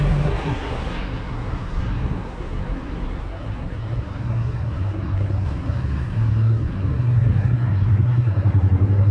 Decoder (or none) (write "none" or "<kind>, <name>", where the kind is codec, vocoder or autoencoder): codec, SNAC